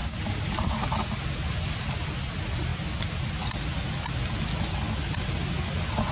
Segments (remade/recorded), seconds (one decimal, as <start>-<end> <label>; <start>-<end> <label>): 0.0-0.7 remade; 0.7-6.1 recorded